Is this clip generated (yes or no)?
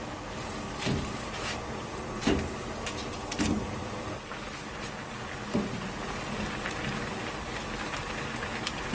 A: no